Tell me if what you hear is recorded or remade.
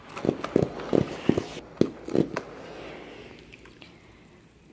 recorded